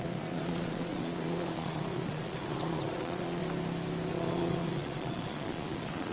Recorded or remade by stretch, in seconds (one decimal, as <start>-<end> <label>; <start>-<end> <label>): 0.0-3.4 remade; 3.4-4.1 recorded; 4.1-6.1 remade